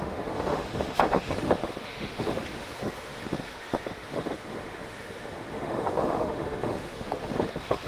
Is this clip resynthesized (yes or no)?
yes